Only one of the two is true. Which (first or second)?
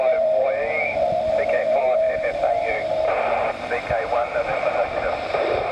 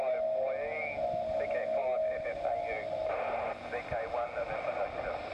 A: second